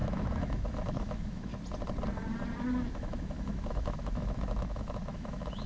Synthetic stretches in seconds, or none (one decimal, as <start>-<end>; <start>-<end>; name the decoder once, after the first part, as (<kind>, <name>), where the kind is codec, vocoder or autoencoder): 0.0-1.5 (autoencoder, DAC-VAE); 2.9-5.7